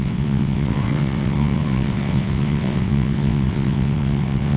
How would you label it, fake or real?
fake